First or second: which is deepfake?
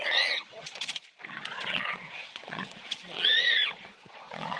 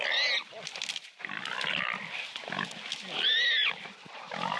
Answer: first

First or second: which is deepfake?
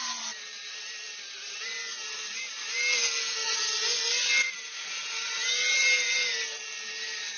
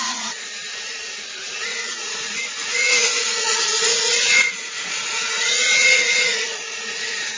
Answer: second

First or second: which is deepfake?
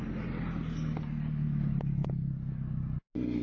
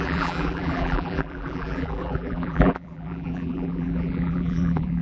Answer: second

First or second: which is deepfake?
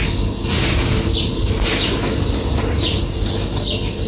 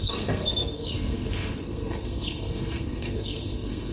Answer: second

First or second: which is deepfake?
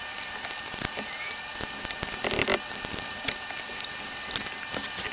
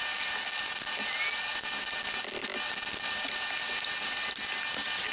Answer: first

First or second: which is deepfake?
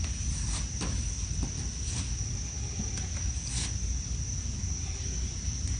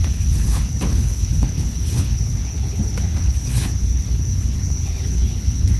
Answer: second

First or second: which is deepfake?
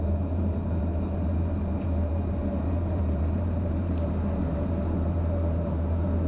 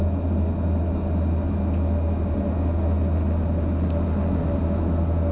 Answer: first